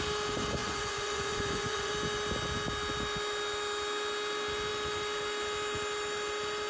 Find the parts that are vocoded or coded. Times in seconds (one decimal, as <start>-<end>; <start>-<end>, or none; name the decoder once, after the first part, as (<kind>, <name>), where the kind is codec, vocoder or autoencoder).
0.6-1.9 (vocoder, Vocos)